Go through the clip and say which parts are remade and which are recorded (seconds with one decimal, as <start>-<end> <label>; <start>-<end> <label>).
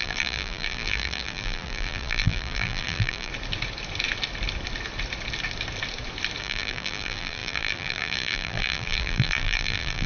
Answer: 0.0-3.3 remade; 3.3-6.4 recorded; 6.4-10.1 remade